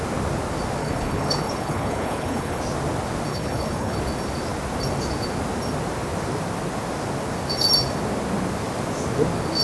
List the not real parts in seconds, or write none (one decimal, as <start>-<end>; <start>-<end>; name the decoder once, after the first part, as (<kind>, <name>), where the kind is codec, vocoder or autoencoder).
0.8-2.6 (codec, HILCodec); 3.3-4.0